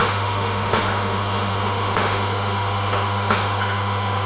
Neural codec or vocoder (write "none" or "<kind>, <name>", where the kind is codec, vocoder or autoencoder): autoencoder, DAC-VAE